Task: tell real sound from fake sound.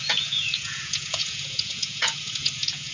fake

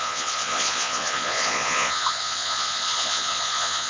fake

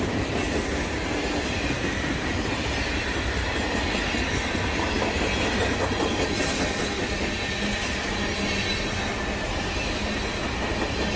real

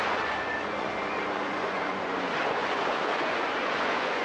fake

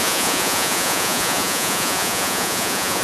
fake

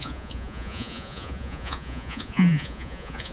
fake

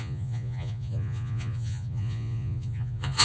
fake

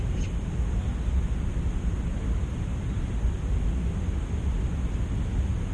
real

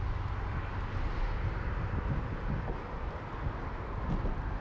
real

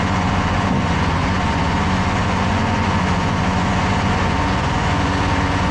fake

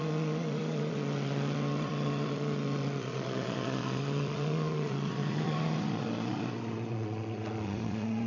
fake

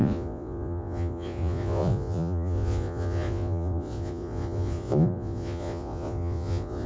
fake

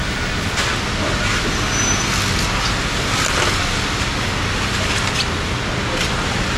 real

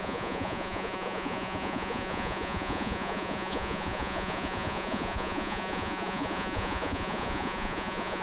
fake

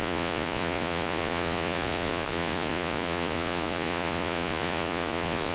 fake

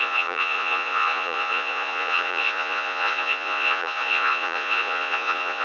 fake